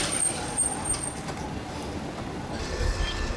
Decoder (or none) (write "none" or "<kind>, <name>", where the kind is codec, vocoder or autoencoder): none